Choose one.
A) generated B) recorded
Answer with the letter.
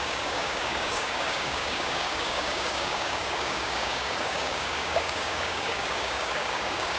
A